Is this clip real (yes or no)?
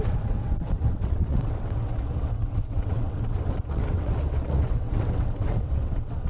no